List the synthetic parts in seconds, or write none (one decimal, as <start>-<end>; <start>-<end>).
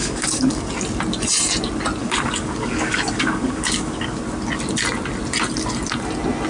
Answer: 0.0-0.7; 2.0-4.2